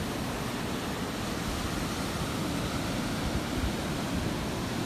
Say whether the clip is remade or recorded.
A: remade